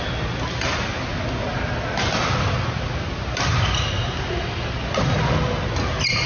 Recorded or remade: recorded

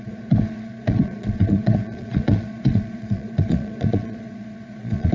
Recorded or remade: remade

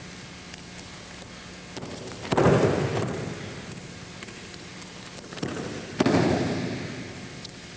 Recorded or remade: recorded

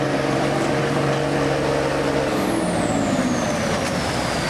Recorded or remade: recorded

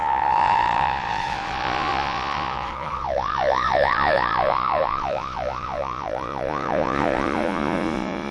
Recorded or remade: remade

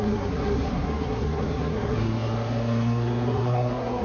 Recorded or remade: remade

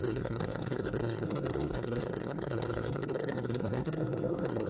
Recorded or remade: remade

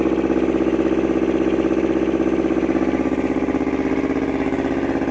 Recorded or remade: recorded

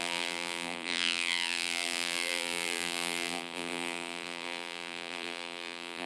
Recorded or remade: remade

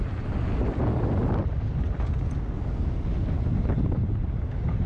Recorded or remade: recorded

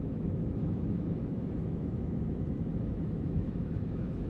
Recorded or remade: remade